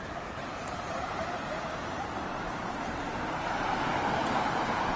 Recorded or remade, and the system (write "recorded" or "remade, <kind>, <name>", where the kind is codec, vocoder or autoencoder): remade, vocoder, BigVGAN v2